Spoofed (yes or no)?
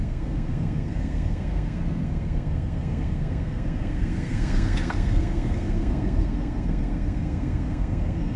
yes